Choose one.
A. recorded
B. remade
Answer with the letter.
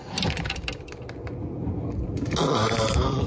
A